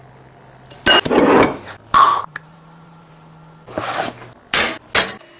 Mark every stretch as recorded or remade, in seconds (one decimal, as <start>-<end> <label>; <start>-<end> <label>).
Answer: 0.0-2.1 recorded; 2.1-3.1 remade; 3.1-5.4 recorded